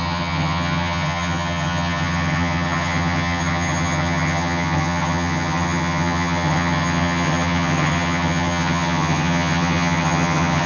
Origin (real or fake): fake